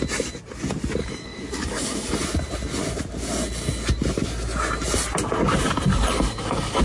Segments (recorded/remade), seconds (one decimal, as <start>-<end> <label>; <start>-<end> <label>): 0.0-1.0 recorded; 1.0-2.1 remade; 2.1-5.9 recorded; 5.9-6.8 remade